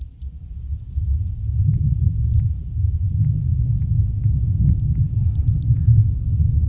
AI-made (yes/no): no